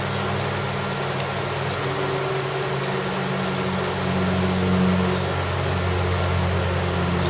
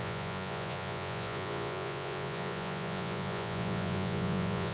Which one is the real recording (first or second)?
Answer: first